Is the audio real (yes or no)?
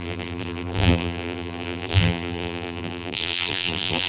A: no